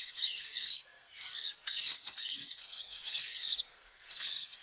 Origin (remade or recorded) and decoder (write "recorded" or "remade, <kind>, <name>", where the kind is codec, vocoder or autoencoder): remade, codec, SNAC